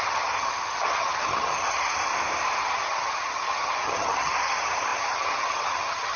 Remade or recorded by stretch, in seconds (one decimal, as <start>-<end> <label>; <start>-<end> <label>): 0.0-2.1 remade; 2.1-2.6 recorded; 2.6-6.2 remade